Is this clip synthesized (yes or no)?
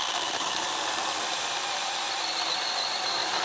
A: yes